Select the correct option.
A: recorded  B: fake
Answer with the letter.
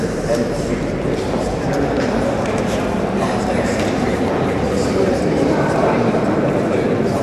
B